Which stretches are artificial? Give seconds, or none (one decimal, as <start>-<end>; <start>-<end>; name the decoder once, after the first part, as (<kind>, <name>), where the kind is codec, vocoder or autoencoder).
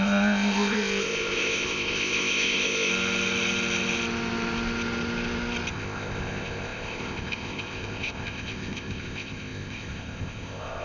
0.0-2.9 (codec, ZipCodec); 5.7-10.8